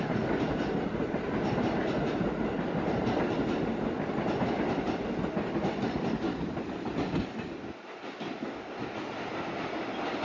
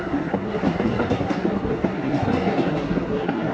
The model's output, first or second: second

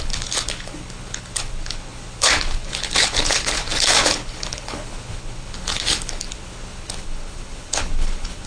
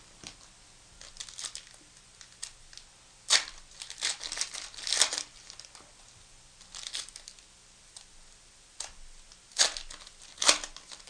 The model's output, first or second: first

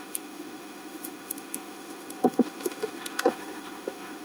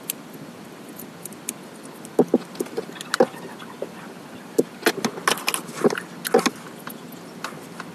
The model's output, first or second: first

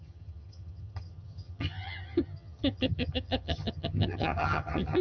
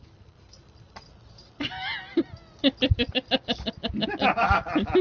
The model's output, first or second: first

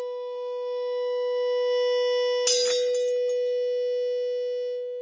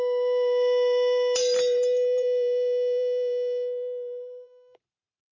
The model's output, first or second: second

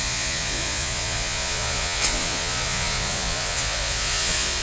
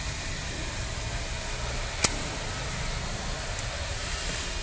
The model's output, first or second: first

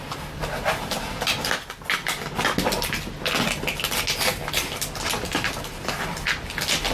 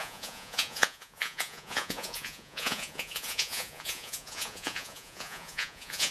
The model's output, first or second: second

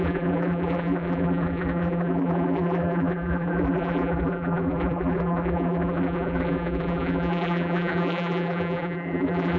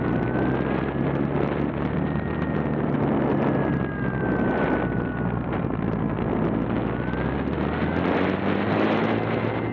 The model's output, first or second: first